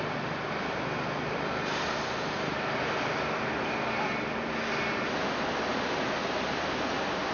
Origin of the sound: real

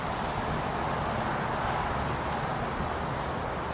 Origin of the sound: real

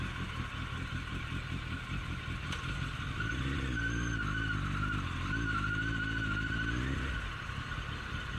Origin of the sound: real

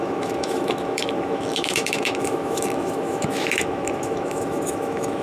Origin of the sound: fake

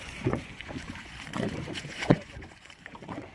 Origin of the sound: fake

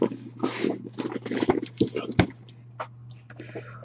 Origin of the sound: real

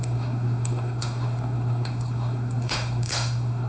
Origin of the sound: fake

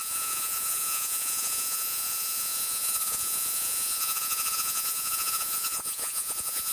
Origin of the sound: fake